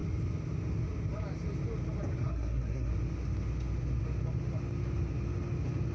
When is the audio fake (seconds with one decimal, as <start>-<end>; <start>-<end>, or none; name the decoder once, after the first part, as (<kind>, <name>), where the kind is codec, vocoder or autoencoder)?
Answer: 2.2-2.9 (codec, SNAC)